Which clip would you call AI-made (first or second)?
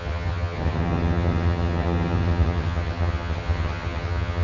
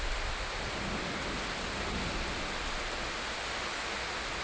first